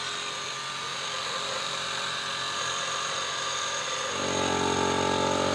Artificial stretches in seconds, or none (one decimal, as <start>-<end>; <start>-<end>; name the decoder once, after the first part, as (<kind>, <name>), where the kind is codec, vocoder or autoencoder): 0.9-4.2 (vocoder, BigVGAN v2)